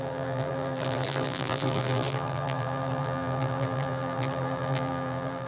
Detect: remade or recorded remade